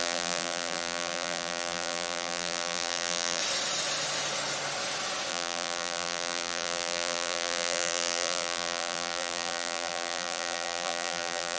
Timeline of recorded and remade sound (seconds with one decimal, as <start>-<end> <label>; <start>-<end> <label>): 0.0-3.4 remade; 3.4-5.3 recorded; 5.3-11.6 remade